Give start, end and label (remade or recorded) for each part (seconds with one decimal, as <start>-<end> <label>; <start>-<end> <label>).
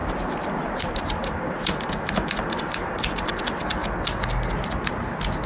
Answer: 0.0-3.3 remade; 3.3-5.5 recorded